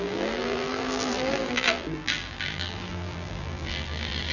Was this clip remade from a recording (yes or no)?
yes